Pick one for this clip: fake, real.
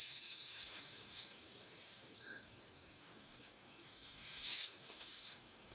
fake